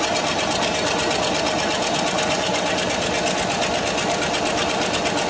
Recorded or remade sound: recorded